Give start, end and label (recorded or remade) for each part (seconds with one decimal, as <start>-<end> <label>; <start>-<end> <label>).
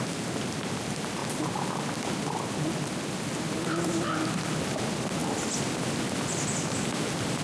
0.0-7.4 recorded